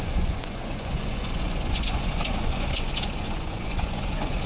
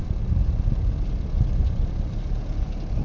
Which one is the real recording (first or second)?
second